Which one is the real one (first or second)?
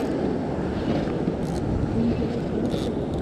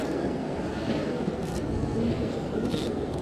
first